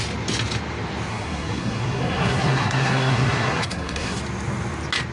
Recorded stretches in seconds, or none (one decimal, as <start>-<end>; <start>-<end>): 0.0-1.1; 4.2-5.1